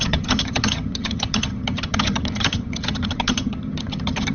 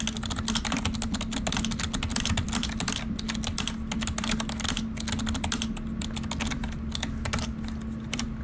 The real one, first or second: second